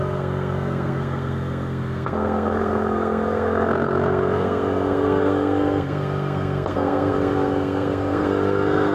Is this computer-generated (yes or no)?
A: yes